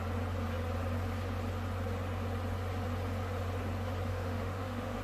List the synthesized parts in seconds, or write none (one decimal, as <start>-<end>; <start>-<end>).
4.1-5.0